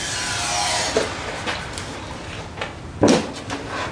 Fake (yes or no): no